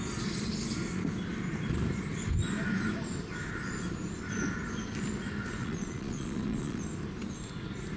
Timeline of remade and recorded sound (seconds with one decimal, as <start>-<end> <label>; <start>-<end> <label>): 0.0-5.6 recorded; 5.6-6.8 remade; 6.8-8.0 recorded